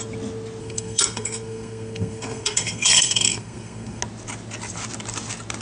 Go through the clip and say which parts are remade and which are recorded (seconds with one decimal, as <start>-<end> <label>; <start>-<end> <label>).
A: 0.0-0.6 recorded; 0.6-4.0 remade; 4.0-5.6 recorded